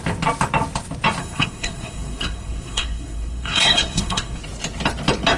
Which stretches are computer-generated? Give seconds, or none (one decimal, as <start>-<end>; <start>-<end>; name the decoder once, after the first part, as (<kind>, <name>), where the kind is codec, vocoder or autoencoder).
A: 1.2-4.4 (codec, SNAC)